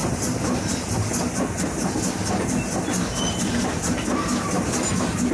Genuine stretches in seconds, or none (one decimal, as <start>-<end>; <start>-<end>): 0.0-5.3